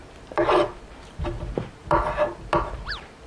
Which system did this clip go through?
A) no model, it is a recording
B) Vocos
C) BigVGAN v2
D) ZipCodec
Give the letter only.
C